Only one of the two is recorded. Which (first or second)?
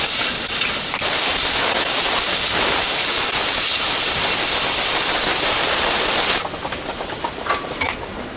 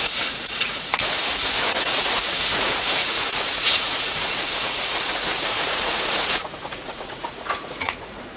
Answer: first